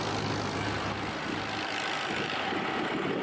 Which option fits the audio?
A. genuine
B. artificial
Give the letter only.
A